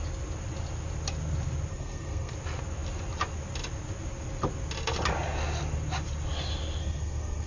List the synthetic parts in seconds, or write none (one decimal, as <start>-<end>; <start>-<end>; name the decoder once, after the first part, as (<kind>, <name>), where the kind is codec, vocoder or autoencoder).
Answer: 1.7-2.3 (codec, SNAC); 6.8-7.5